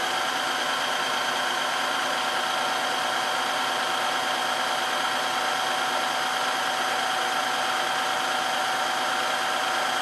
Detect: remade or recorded recorded